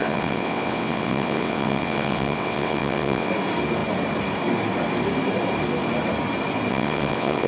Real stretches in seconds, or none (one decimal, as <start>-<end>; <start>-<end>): 3.3-6.7